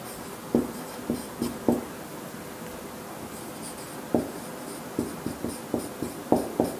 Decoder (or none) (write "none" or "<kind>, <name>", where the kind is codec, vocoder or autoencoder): none